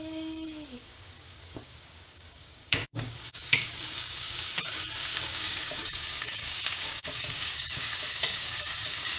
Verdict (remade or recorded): remade